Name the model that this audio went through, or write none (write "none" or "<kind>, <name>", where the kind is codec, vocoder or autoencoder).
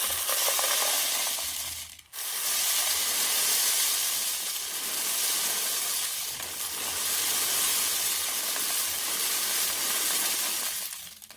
none